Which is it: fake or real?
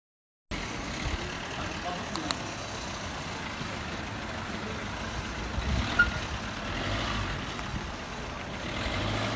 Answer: real